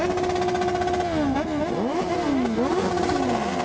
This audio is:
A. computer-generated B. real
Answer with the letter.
B